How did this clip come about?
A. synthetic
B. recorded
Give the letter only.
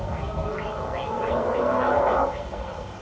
A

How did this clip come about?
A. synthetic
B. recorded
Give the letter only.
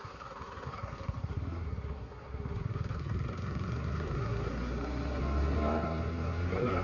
A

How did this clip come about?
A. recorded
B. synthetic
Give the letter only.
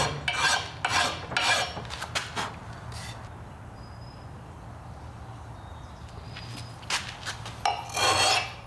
A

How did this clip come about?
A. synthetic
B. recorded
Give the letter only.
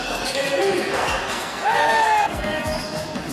A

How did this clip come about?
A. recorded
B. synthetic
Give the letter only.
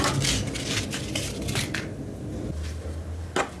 A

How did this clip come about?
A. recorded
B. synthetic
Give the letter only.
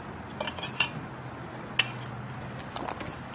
A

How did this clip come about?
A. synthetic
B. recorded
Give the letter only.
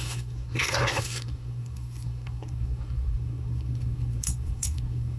A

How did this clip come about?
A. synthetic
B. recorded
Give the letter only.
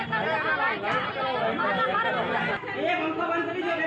B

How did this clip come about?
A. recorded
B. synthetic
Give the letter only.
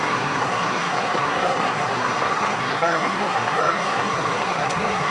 B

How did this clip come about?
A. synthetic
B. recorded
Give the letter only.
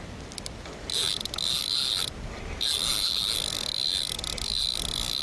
B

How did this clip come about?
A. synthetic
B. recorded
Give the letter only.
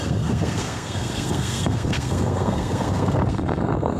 A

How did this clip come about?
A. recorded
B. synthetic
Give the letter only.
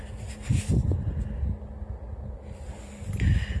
A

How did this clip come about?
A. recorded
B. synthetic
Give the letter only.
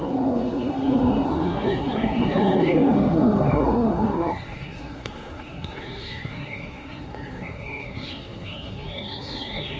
B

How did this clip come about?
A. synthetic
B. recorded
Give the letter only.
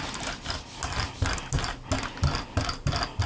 B